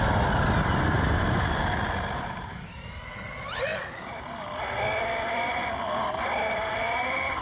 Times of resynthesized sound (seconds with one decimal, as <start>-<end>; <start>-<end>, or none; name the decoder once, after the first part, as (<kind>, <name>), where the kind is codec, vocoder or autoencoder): none